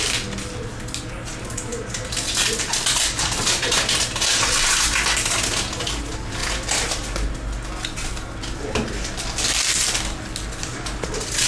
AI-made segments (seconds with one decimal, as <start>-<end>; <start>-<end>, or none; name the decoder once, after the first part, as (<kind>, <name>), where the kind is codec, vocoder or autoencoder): none